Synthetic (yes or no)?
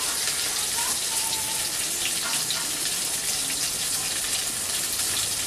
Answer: no